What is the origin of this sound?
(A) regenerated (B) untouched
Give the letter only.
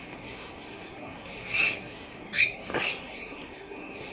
A